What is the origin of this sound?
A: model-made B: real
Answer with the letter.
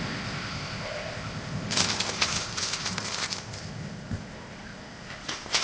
A